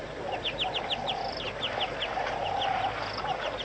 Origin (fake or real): real